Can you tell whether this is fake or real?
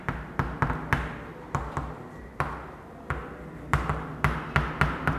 real